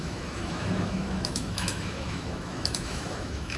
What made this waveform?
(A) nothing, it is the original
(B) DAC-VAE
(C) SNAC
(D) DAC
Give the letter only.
B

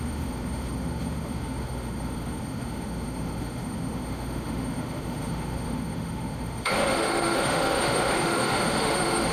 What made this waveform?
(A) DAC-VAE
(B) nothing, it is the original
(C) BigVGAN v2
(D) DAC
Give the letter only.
A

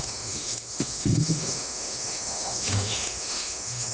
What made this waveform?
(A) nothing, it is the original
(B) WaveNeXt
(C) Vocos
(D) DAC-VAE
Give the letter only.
D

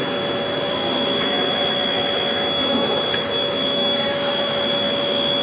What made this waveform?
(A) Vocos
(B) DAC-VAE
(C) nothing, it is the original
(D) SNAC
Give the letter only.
B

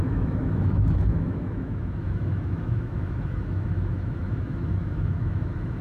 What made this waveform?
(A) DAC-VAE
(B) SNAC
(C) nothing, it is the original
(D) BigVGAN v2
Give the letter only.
A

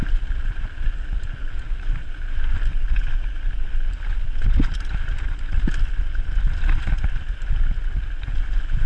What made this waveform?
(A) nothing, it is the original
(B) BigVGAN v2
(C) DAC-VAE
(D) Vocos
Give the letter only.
A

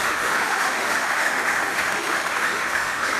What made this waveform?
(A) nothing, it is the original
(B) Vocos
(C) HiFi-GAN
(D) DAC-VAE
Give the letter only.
D